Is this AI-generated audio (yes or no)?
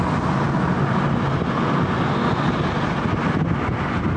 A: no